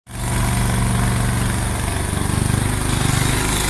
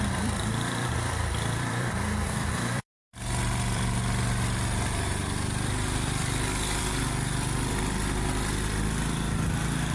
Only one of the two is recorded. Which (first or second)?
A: first